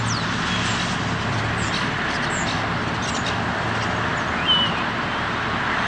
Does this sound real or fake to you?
real